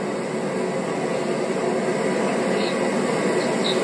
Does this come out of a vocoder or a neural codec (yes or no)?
no